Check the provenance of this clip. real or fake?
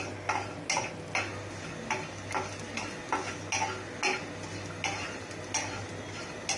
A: real